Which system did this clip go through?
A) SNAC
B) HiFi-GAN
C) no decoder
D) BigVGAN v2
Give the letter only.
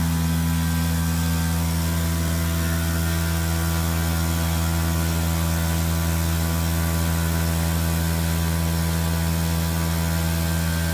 C